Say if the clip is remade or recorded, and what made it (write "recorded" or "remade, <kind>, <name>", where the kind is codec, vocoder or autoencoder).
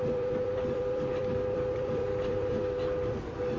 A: remade, vocoder, BigVGAN v2